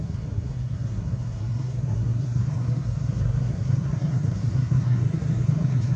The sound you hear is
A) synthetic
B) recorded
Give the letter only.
A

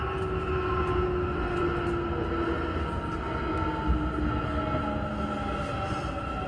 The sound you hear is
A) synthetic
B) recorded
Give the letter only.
B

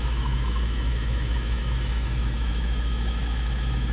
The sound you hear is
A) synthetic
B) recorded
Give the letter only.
A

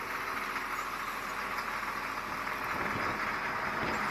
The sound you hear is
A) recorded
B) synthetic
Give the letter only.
A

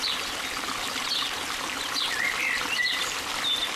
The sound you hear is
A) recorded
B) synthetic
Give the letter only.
A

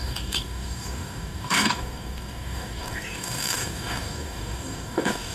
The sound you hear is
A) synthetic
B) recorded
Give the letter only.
A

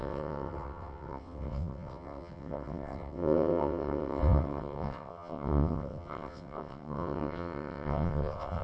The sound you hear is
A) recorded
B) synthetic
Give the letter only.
B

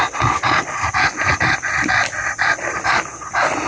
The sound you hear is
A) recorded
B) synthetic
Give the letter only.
A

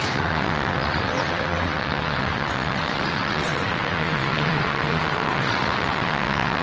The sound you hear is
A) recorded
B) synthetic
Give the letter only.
B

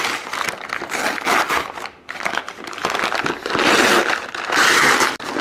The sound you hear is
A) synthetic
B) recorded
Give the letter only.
B